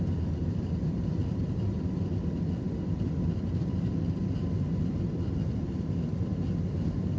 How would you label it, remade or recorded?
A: remade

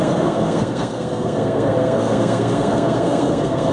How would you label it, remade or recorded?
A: remade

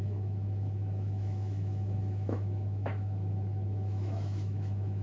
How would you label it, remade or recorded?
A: remade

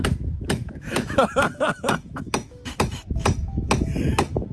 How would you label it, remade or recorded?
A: remade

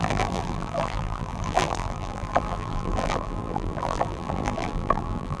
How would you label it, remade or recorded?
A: remade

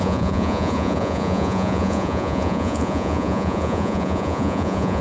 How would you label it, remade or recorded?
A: remade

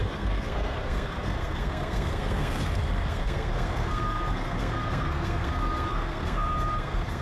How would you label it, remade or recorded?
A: remade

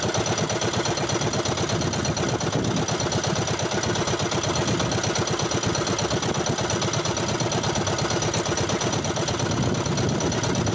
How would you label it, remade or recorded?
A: recorded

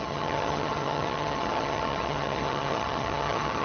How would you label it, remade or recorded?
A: remade